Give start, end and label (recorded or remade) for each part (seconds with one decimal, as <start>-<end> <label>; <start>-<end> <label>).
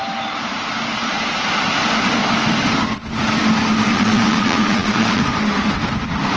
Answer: 0.0-3.9 recorded; 3.9-5.2 remade; 5.2-6.4 recorded